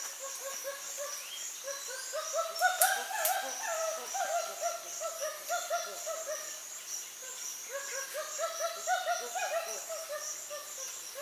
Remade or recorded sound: recorded